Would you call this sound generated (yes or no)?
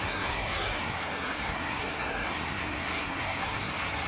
yes